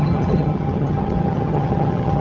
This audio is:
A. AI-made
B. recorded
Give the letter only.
A